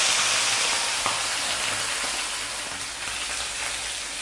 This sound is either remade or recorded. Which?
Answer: recorded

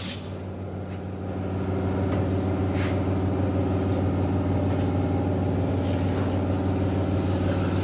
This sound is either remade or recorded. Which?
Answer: recorded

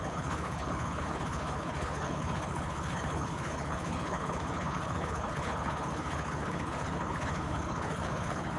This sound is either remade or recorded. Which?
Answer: remade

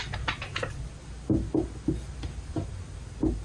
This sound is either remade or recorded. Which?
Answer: recorded